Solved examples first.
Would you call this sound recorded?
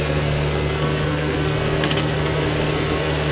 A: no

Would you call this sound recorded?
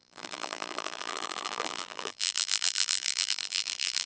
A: no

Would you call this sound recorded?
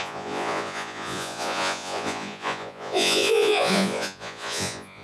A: no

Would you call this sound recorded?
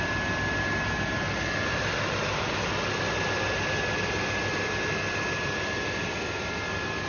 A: yes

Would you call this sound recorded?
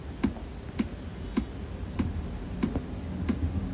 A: yes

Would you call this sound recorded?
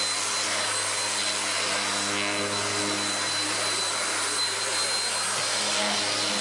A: yes